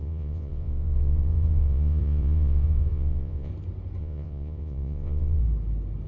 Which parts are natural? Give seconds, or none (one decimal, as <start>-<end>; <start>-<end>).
3.5-4.0; 5.4-6.1